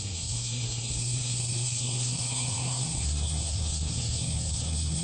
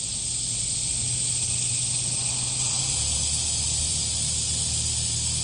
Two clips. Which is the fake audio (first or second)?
first